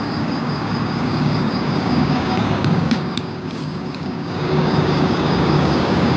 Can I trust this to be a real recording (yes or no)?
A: no